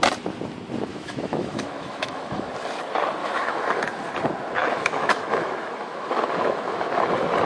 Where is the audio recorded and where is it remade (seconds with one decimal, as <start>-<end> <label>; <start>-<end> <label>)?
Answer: 0.0-0.9 recorded; 0.9-2.5 remade; 2.5-3.2 recorded; 3.2-3.8 remade; 3.8-4.6 recorded; 4.6-6.9 remade; 6.9-7.5 recorded